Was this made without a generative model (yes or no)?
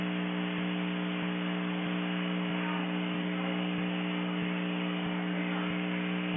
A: yes